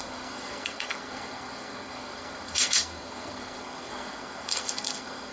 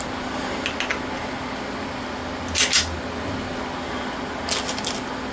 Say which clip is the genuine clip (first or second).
second